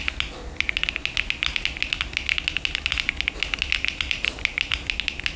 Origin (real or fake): real